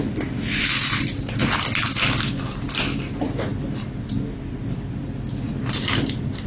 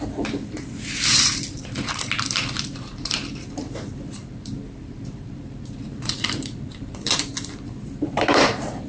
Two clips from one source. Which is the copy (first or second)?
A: second